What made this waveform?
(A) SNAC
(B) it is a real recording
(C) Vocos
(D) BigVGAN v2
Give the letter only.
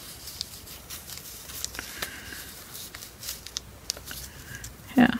D